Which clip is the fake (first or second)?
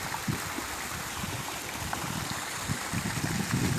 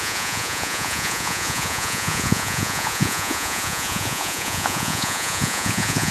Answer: second